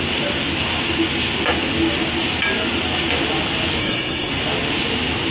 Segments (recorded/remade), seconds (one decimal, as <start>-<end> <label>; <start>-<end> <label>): 0.0-3.8 recorded; 3.8-4.3 remade; 4.3-5.3 recorded